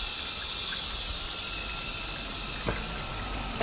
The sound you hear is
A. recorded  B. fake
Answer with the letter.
A